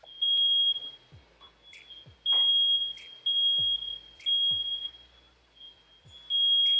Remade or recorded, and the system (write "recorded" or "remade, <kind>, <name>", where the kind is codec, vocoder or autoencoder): recorded